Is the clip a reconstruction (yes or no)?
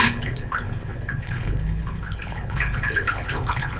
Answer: yes